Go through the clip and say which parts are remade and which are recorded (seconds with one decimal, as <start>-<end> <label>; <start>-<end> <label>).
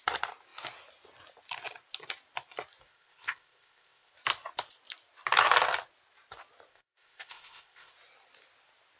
0.0-2.9 recorded; 2.9-4.1 remade; 4.1-6.7 recorded; 6.7-7.9 remade; 7.9-9.0 recorded